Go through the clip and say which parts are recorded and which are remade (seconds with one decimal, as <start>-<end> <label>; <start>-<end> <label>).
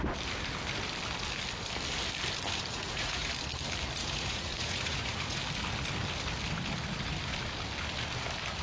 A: 0.0-2.7 recorded; 2.7-3.3 remade; 3.3-4.0 recorded; 4.0-5.4 remade; 5.4-8.6 recorded